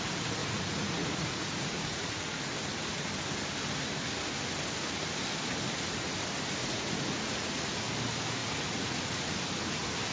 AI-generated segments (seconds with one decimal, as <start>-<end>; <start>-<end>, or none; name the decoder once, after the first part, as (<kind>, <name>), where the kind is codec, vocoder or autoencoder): 0.4-2.4 (vocoder, Vocos); 6.6-7.7; 8.4-9.3